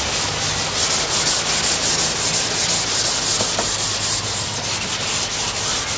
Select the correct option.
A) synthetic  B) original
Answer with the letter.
B